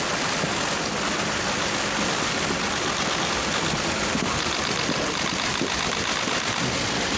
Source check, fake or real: real